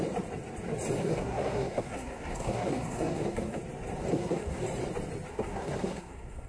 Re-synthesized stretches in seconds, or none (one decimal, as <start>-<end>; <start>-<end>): 1.0-3.6; 4.1-4.6; 5.3-6.5